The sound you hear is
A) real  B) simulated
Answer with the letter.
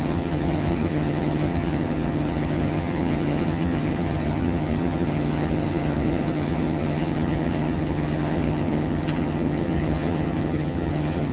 B